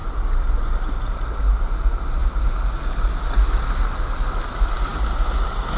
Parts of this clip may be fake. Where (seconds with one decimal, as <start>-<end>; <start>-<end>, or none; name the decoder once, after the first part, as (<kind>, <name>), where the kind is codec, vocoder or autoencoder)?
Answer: none